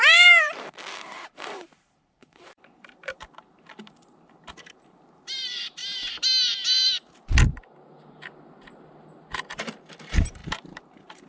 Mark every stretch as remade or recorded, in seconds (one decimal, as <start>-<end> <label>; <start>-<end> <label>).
0.0-5.8 remade; 5.8-10.0 recorded; 10.0-11.3 remade